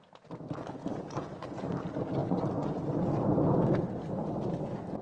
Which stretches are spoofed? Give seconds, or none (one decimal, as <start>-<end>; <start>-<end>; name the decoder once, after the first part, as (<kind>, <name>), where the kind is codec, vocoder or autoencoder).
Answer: 0.8-1.7 (vocoder, Vocos); 2.2-2.8